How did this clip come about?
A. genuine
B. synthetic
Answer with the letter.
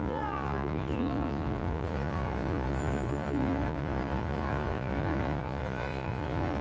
B